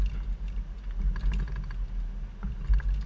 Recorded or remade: recorded